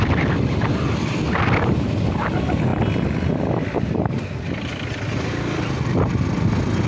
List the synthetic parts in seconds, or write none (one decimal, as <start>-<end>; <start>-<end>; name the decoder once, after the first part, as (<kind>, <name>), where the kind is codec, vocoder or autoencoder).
none